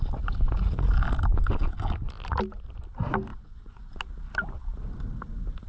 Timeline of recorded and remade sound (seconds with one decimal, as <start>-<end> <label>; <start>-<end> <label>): 0.0-3.3 recorded; 3.3-4.0 remade; 4.0-5.7 recorded